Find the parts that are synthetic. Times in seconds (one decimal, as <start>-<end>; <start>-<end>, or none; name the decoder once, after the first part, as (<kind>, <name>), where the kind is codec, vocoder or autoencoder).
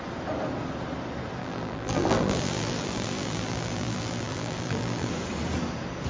1.4-5.1 (vocoder, BigVGAN v2)